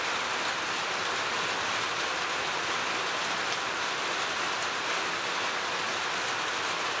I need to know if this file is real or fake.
real